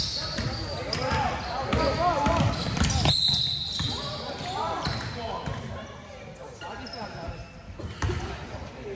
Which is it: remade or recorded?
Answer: recorded